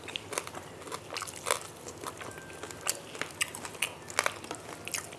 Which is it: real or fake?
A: real